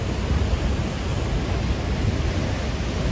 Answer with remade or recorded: recorded